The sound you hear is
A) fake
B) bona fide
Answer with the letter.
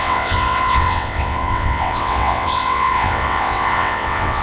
A